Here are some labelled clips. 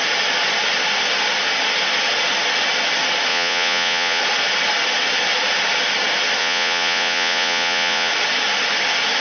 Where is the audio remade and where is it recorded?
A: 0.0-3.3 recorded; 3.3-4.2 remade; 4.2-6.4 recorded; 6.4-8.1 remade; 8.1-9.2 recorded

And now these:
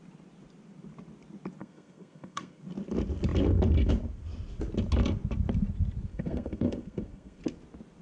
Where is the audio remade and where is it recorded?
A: 0.0-1.6 recorded; 1.6-2.6 remade; 2.6-6.1 recorded; 6.1-7.4 remade; 7.4-8.0 recorded

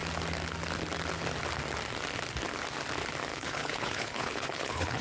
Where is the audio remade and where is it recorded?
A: 0.0-3.3 recorded; 3.3-5.0 remade

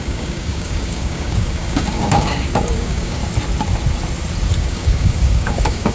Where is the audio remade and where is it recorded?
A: 0.0-3.2 remade; 3.2-4.6 recorded; 4.6-5.9 remade

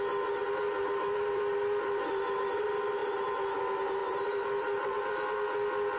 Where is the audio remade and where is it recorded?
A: 0.0-0.4 recorded; 0.4-2.4 remade; 2.4-3.0 recorded; 3.0-3.6 remade; 3.6-4.0 recorded; 4.0-5.5 remade; 5.5-6.0 recorded